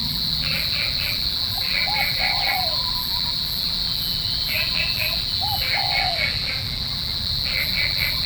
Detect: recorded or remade remade